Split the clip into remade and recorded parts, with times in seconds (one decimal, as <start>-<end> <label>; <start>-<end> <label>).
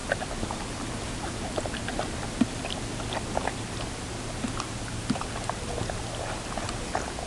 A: 0.0-7.3 recorded